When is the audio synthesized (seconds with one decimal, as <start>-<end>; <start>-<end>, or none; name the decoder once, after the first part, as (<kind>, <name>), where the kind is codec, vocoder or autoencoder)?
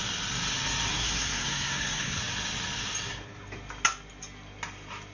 0.9-2.2 (codec, SNAC)